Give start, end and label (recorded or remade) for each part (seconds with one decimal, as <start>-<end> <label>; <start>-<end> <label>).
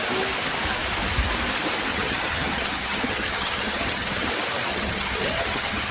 0.0-1.9 recorded; 1.9-4.3 remade; 4.3-4.7 recorded; 4.7-5.9 remade